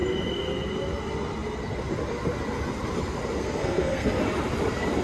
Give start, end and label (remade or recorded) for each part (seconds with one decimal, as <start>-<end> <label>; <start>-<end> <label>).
0.0-3.4 recorded; 3.4-4.2 remade; 4.2-5.0 recorded